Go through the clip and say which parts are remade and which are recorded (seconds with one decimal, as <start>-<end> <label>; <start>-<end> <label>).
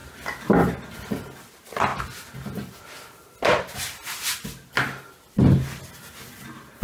0.0-6.8 recorded